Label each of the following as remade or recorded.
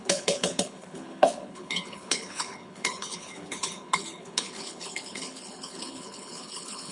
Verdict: remade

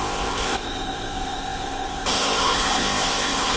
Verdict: remade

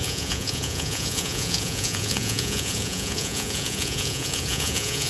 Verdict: remade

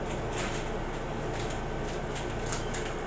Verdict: recorded